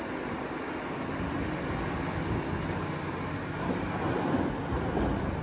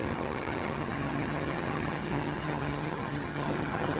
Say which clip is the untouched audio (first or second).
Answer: first